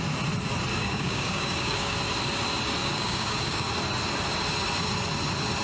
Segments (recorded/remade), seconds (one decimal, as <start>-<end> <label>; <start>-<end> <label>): 0.0-0.7 recorded; 0.7-2.0 remade; 2.0-2.8 recorded; 2.8-3.7 remade; 3.7-5.6 recorded